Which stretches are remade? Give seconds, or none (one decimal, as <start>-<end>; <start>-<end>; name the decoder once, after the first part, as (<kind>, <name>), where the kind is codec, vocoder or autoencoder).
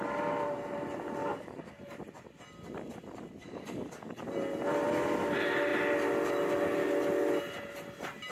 1.2-1.8 (codec, DAC); 3.4-4.2